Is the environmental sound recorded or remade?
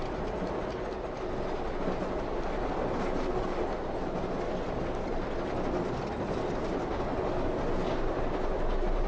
recorded